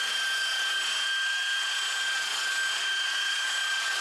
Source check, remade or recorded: recorded